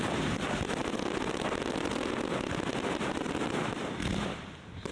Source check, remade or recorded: recorded